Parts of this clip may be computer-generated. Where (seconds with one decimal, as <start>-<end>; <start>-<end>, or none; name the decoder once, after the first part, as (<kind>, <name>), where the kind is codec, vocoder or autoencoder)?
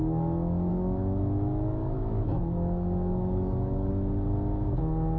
0.7-1.2 (codec, DAC); 1.8-3.9